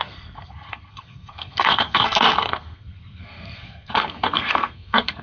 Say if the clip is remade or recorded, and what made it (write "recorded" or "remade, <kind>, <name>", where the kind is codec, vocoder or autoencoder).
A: remade, codec, SNAC